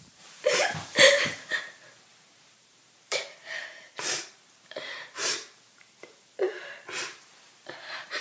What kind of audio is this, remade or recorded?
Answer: remade